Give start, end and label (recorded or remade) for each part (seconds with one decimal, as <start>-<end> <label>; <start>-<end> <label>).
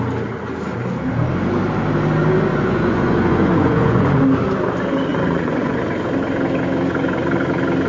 0.0-2.5 recorded; 2.5-4.2 remade; 4.2-5.1 recorded; 5.1-5.8 remade; 5.8-7.9 recorded